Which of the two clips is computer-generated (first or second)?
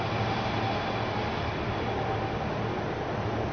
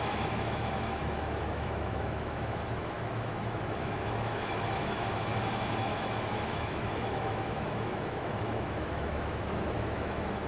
second